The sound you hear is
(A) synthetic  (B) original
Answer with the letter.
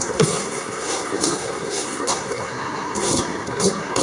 A